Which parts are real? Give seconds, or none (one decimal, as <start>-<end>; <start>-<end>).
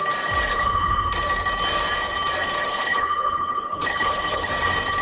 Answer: 0.0-0.5; 1.1-2.7; 4.5-5.0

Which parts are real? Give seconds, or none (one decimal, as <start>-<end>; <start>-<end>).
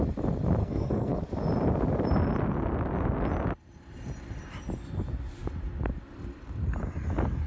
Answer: 0.0-0.6; 1.2-7.5